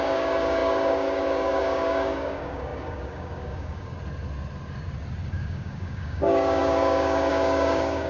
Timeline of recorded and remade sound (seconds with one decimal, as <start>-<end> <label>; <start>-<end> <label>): 0.0-3.9 remade; 3.9-5.3 recorded; 5.3-8.1 remade